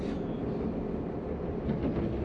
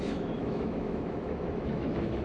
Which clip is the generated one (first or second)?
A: second